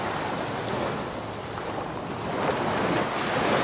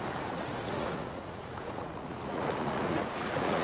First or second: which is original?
first